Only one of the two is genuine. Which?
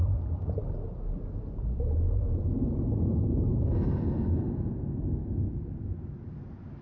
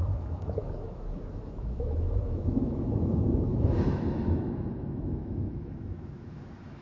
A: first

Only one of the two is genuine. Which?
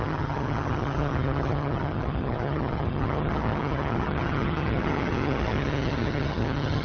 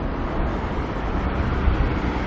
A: second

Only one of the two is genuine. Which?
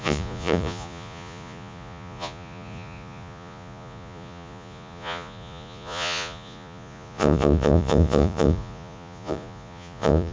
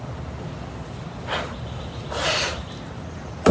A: second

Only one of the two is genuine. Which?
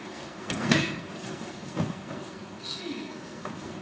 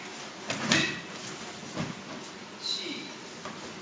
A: second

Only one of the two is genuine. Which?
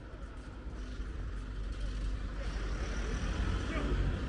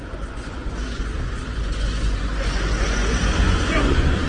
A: first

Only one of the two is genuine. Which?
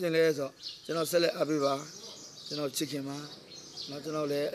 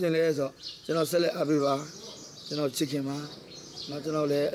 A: first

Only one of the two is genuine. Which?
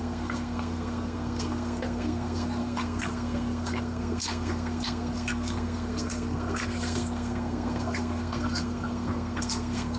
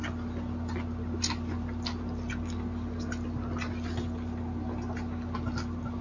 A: second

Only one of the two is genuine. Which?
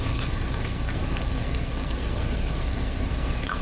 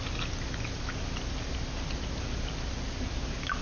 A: second